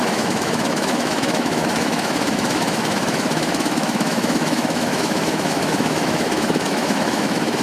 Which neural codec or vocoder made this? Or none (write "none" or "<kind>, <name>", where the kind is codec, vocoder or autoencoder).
autoencoder, DAC-VAE